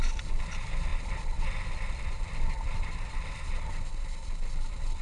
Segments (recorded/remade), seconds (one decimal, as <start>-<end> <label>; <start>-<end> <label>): 0.0-5.0 recorded